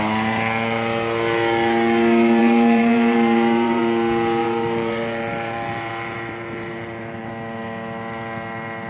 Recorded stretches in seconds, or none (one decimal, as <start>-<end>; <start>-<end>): 0.0-2.4; 3.8-4.4; 7.3-8.9

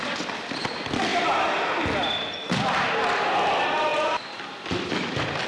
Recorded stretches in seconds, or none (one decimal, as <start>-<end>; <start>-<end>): 0.0-5.5

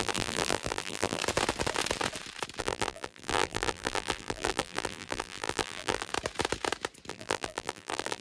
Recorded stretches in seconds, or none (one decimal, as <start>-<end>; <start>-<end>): 1.2-2.6; 6.1-7.1

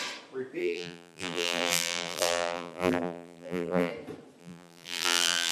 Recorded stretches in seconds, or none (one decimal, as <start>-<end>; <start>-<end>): 0.0-0.6; 3.9-4.4

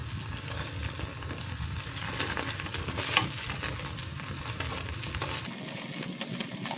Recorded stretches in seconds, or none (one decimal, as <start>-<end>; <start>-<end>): 0.0-4.0; 4.6-6.8

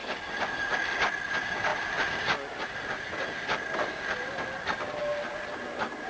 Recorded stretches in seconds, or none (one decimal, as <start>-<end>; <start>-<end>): 0.0-1.7; 5.0-6.1

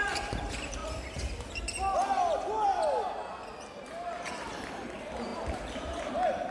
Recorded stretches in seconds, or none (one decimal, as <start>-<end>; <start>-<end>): 0.8-3.8